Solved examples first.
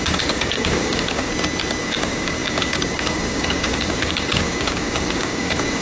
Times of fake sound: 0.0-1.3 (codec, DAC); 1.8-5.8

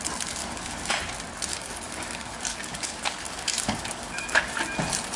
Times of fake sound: 0.4-0.9 (codec, DAC); 1.5-4.6

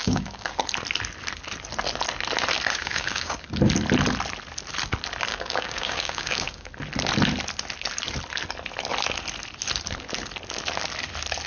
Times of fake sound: 0.0-0.6 (codec, DAC); 2.8-3.5; 5.3-6.7

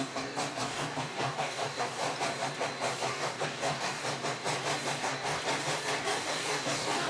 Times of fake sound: 0.0-2.0 (codec, DAC); 3.1-4.0; 5.0-5.4; 6.0-7.1